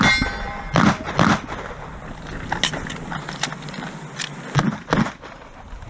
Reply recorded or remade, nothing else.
recorded